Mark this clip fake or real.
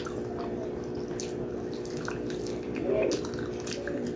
real